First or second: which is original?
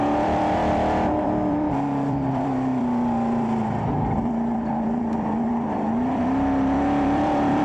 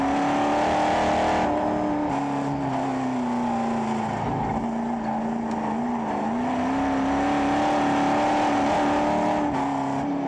second